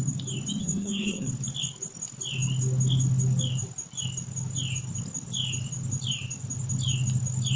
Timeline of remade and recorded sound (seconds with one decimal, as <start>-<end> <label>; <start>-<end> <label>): 0.0-0.6 recorded; 0.6-1.3 remade; 1.3-7.6 recorded